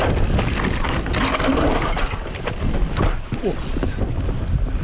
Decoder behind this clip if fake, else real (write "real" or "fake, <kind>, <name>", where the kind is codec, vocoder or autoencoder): real